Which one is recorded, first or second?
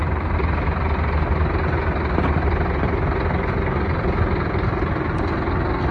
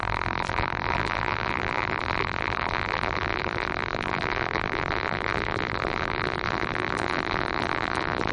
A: first